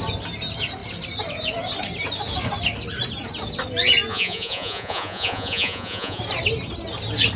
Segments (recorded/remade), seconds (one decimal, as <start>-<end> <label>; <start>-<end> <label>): 0.0-4.1 recorded; 4.1-6.2 remade; 6.2-7.4 recorded